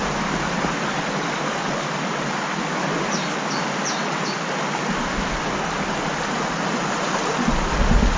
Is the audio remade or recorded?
recorded